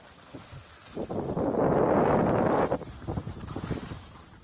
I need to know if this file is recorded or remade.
recorded